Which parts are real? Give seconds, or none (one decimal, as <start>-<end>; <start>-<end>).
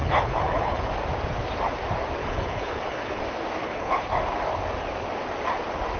0.9-2.2; 3.2-3.6; 4.1-6.0